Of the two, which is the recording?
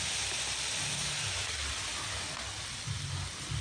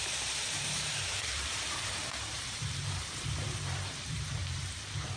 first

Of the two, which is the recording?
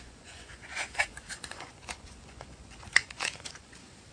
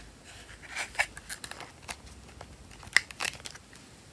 second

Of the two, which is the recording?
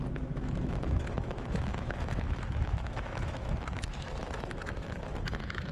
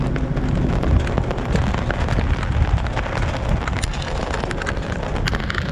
second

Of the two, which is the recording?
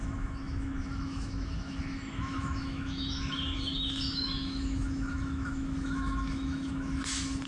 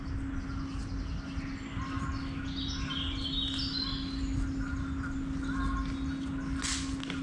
second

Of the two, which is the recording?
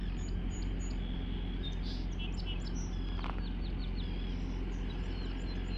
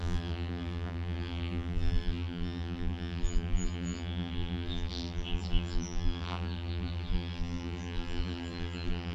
first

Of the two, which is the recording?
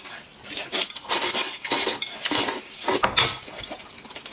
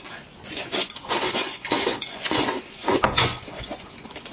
first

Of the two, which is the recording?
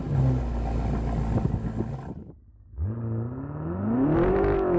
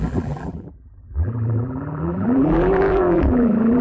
first